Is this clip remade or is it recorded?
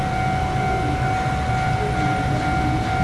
recorded